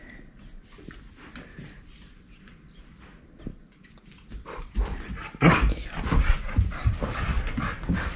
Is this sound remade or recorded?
recorded